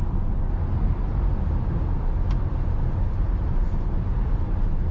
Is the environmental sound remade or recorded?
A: remade